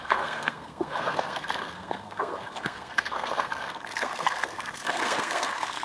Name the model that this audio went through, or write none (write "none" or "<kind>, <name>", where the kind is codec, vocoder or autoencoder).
codec, SNAC